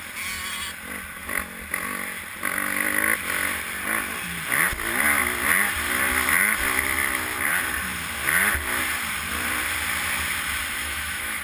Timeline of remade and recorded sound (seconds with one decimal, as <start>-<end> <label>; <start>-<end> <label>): 0.0-10.8 recorded; 10.8-11.4 remade